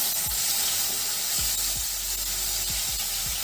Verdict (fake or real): real